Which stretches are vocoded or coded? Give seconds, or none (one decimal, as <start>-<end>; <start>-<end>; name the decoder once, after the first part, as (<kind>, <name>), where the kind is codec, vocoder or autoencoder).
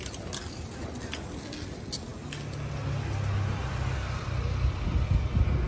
none